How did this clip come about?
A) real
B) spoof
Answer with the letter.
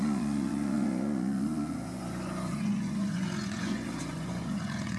B